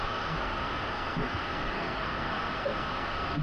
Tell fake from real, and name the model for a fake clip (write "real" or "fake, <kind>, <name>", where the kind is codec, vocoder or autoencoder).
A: fake, codec, SNAC